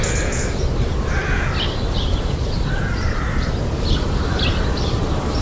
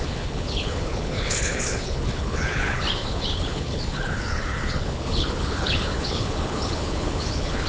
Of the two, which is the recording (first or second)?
first